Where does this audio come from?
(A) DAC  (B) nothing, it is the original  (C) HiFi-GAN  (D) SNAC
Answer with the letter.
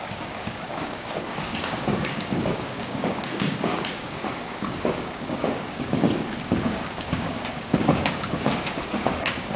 A